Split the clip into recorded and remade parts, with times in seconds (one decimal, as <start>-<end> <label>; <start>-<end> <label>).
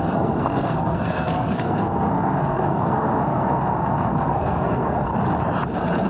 0.0-5.1 remade; 5.1-6.1 recorded